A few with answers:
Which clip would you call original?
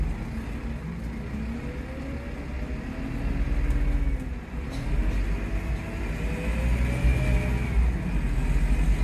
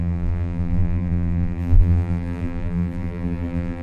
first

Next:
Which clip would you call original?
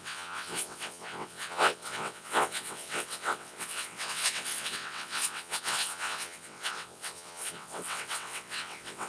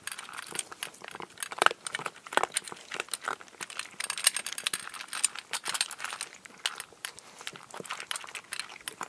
second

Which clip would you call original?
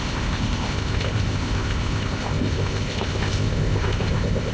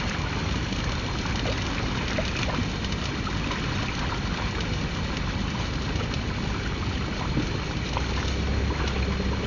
second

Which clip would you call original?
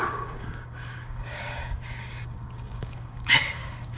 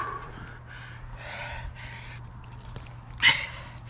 second